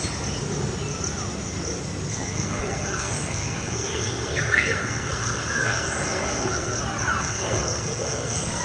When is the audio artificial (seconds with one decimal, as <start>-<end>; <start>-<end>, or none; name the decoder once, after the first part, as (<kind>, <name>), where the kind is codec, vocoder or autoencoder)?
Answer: 2.1-6.8 (codec, SNAC); 7.2-8.6